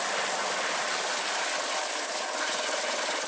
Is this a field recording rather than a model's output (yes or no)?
yes